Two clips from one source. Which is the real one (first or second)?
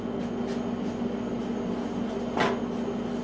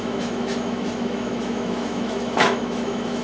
first